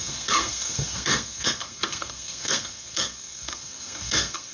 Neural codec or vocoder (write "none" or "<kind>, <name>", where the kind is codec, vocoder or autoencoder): codec, SNAC